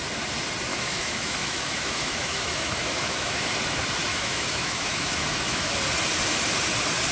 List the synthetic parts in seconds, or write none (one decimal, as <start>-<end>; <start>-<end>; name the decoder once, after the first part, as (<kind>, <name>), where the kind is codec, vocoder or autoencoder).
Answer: 0.7-3.5 (autoencoder, DAC-VAE); 4.1-5.7